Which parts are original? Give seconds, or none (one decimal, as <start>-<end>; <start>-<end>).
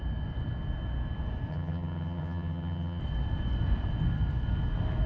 0.0-1.5; 3.0-5.1